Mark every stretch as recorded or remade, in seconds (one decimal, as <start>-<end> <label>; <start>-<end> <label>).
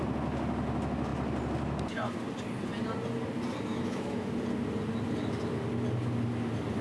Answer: 0.0-3.7 recorded; 3.7-4.3 remade; 4.3-6.8 recorded